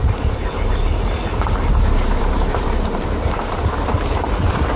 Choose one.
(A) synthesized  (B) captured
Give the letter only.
A